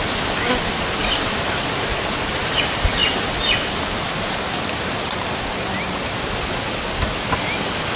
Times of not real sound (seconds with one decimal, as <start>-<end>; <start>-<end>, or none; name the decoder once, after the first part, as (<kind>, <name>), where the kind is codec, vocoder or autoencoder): none